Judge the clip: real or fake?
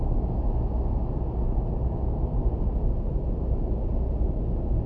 real